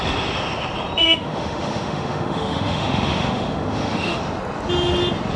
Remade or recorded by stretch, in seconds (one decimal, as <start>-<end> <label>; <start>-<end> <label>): 0.0-1.0 recorded; 1.0-4.2 remade; 4.2-5.4 recorded